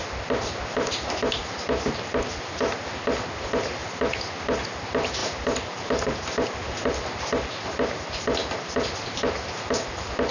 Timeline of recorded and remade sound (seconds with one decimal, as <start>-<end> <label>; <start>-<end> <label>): 0.0-10.3 recorded